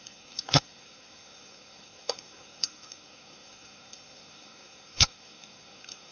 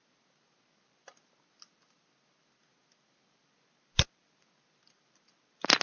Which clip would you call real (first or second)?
second